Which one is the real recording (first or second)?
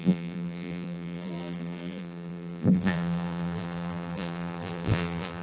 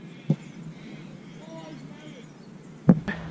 second